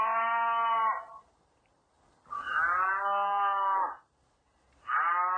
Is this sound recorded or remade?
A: recorded